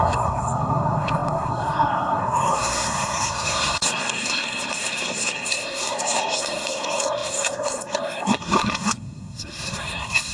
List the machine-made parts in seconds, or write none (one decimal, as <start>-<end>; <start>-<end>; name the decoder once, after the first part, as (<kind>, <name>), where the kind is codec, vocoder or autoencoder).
0.0-10.3 (codec, SNAC)